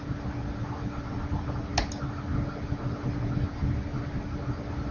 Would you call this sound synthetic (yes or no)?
no